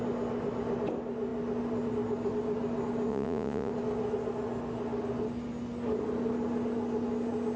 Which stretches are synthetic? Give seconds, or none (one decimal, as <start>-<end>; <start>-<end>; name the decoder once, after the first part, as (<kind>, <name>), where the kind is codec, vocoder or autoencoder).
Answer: 3.1-3.7 (vocoder, Vocos)